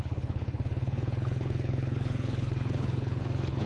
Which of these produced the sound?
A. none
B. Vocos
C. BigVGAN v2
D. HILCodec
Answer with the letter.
D